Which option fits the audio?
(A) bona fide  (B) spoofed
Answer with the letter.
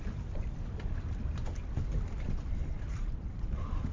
A